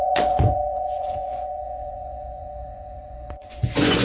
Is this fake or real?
fake